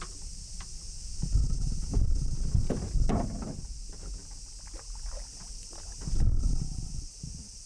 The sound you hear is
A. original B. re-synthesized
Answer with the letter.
A